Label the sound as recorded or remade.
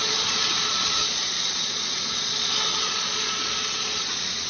remade